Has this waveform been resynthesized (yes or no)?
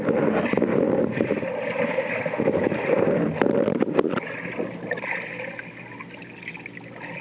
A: no